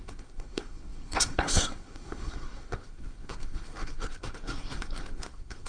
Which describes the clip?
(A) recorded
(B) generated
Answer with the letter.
B